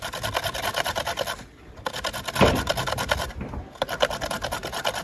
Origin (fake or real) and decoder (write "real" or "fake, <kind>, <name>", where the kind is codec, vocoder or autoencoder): real